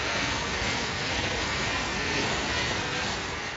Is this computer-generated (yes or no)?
yes